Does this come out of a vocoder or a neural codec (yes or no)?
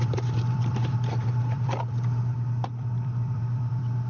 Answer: yes